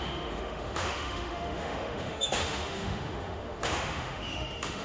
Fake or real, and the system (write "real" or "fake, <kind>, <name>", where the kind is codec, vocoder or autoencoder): fake, autoencoder, DAC-VAE